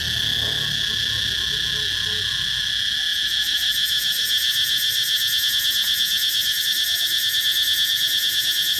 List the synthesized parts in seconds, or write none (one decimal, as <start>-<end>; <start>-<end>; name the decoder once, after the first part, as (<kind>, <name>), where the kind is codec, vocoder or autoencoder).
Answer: 7.9-8.8 (vocoder, Vocos)